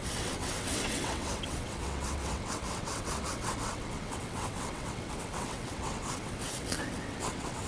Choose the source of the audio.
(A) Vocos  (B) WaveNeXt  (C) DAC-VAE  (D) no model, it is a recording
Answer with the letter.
B